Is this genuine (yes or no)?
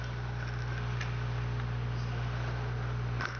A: yes